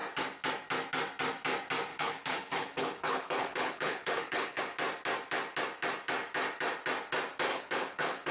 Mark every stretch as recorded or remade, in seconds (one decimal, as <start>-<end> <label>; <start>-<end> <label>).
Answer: 0.0-1.9 recorded; 1.9-4.6 remade; 4.6-7.5 recorded; 7.5-8.3 remade